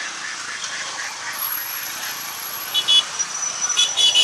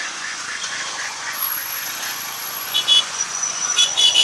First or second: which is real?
first